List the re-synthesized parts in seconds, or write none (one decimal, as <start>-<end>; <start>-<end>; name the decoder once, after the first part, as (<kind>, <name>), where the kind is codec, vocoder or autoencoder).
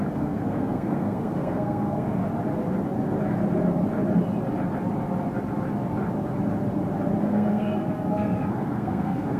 0.0-2.2 (codec, SNAC); 7.2-9.4